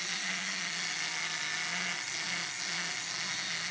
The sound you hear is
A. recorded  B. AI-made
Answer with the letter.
A